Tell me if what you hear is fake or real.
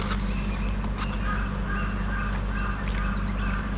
real